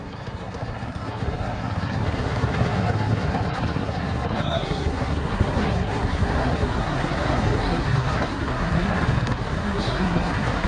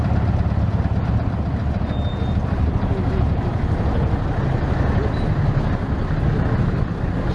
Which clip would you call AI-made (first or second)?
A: first